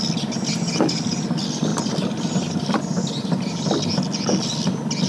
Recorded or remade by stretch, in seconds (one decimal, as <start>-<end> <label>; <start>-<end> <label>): 0.0-5.1 recorded